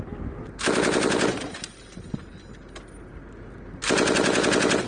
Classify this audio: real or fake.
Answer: real